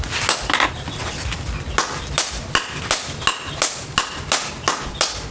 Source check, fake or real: real